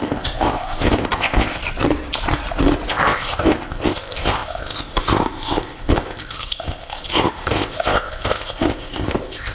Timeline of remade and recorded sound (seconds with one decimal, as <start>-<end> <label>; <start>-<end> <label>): 0.0-1.6 remade; 1.6-2.9 recorded; 2.9-9.5 remade